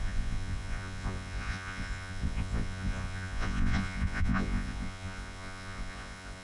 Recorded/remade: remade